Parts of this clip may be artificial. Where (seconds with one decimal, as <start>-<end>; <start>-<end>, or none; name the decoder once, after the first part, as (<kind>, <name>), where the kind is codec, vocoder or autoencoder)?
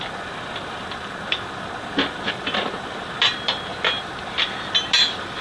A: none